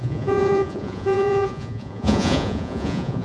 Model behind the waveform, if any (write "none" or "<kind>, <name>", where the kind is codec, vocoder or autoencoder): vocoder, Vocos